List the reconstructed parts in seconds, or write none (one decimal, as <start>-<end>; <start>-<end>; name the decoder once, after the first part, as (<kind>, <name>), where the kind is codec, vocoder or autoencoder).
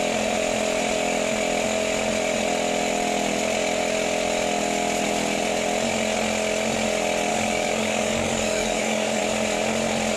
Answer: 7.3-9.2 (codec, DAC)